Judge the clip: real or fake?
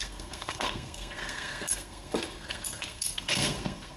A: fake